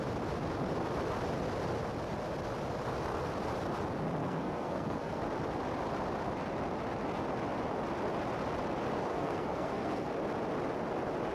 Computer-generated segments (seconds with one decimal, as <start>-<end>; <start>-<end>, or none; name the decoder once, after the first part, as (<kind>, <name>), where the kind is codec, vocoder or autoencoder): 4.2-5.2 (codec, SNAC); 9.1-10.1